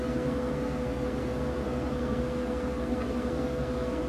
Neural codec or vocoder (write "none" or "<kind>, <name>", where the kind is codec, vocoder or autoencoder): codec, SNAC